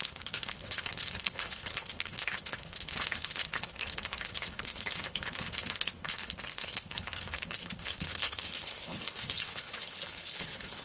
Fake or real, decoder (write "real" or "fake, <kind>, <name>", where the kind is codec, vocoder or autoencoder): fake, codec, HILCodec